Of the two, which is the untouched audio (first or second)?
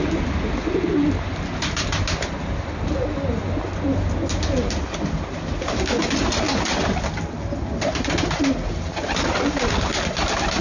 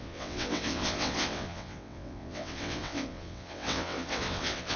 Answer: first